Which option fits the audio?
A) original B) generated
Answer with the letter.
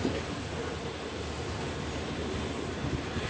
A